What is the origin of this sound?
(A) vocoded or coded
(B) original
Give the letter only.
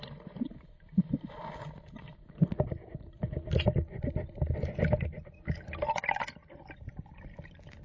B